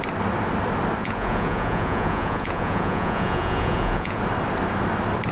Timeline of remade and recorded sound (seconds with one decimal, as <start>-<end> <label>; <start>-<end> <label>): 0.0-1.0 recorded; 1.0-4.2 remade; 4.2-5.3 recorded